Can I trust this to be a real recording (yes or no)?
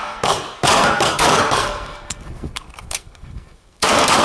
no